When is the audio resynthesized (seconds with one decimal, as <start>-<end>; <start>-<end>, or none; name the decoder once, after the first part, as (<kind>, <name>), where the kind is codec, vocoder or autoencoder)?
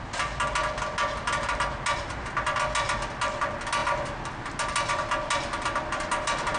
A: none